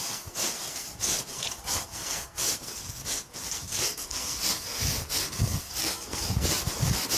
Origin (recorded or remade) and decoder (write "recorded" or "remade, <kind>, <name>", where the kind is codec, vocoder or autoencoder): remade, codec, SNAC